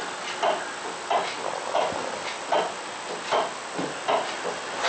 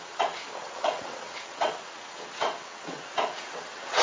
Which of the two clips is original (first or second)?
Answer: first